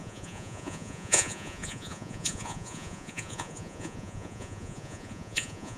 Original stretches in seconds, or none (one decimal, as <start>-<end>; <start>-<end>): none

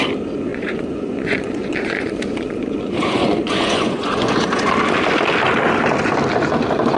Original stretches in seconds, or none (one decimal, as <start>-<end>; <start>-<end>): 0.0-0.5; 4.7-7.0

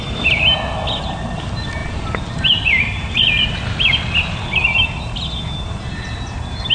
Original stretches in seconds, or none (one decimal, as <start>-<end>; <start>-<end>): 0.0-6.7